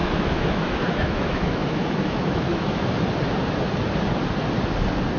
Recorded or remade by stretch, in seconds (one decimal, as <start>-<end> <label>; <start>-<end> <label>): 0.0-2.9 remade; 2.9-5.2 recorded